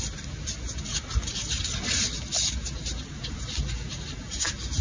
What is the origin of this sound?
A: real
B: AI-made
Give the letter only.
A